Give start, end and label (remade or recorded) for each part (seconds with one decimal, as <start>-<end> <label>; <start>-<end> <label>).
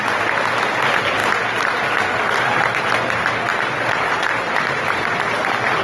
0.0-3.5 recorded; 3.5-5.8 remade